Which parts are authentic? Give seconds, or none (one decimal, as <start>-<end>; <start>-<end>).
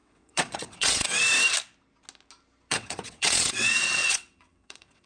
1.2-2.7